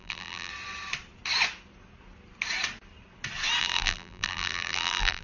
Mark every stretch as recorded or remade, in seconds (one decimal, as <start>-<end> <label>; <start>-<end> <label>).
0.0-0.5 remade; 0.5-3.6 recorded; 3.6-5.2 remade